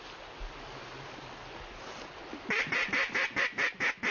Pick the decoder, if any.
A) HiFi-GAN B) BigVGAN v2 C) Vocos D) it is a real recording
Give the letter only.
D